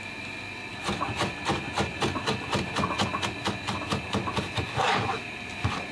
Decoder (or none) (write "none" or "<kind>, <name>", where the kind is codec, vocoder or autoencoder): none